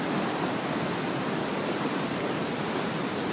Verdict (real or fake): real